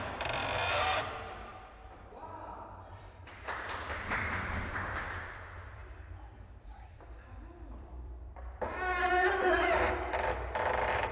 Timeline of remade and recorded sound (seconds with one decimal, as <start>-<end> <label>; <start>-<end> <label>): 0.0-0.4 remade; 0.4-1.0 recorded; 1.0-5.8 remade; 5.8-6.6 recorded; 6.6-11.1 remade